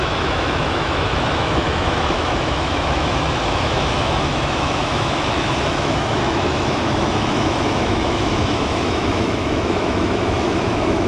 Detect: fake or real fake